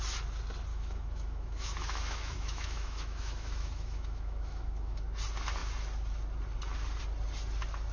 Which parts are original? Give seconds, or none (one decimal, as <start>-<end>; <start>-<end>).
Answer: 0.0-0.7; 5.0-7.9